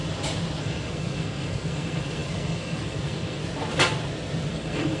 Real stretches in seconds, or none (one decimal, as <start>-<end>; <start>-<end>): 0.0-0.6; 3.4-4.5